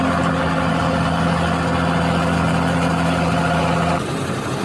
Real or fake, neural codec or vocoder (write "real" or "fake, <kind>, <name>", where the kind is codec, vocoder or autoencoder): real